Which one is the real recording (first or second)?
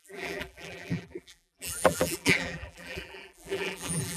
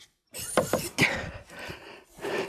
second